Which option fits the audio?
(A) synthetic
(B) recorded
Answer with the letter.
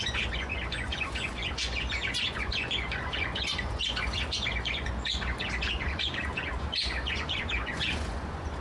A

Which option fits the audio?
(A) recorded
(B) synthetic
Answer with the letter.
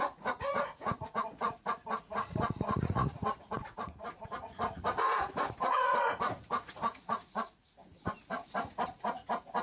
B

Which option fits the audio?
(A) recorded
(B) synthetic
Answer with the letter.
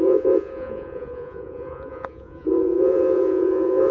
B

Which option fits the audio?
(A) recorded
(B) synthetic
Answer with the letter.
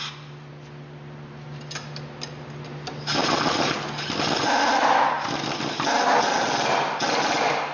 A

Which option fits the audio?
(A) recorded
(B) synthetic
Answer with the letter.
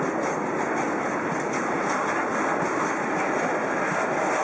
A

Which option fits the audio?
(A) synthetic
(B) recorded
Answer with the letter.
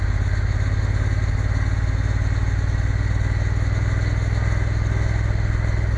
B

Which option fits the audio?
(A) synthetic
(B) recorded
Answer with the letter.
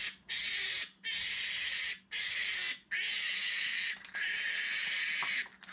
B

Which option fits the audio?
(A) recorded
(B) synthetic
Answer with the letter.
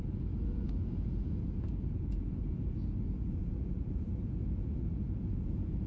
B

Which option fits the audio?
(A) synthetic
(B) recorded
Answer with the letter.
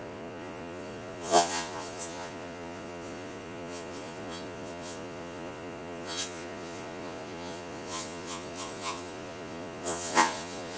A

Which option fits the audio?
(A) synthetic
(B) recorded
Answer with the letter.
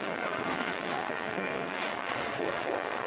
A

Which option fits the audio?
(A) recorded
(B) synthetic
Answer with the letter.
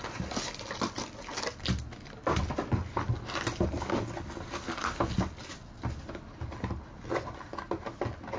A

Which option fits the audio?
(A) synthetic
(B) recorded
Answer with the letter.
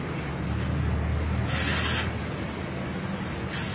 B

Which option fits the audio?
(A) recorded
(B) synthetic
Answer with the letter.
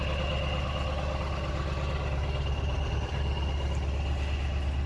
A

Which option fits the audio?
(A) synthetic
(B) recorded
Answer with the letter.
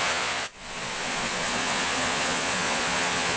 A